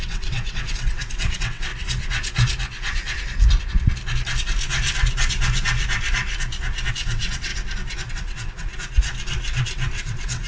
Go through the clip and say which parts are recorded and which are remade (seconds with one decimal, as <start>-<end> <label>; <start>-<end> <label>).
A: 0.0-1.7 remade; 1.7-6.9 recorded; 6.9-7.5 remade; 7.5-8.1 recorded; 8.1-8.7 remade; 8.7-9.6 recorded; 9.6-10.5 remade